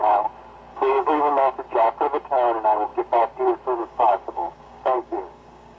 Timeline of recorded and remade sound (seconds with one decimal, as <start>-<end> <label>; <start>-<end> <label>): 0.0-0.7 recorded; 0.7-1.5 remade; 1.5-3.8 recorded; 3.8-5.8 remade